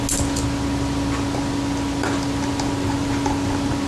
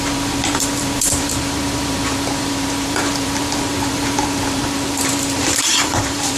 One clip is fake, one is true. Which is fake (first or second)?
second